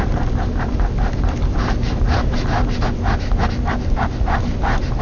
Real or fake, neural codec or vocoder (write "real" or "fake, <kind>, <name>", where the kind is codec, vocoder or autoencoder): real